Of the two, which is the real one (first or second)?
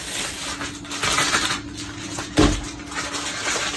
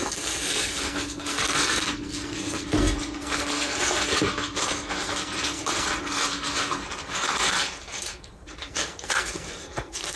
first